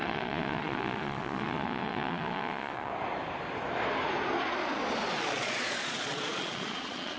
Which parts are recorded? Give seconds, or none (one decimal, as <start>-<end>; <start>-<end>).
2.9-5.2